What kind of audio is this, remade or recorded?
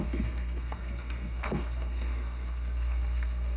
remade